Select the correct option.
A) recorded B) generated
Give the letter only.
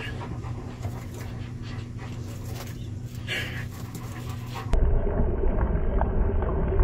A